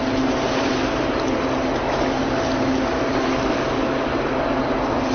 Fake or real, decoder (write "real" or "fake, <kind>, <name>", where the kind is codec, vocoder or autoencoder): real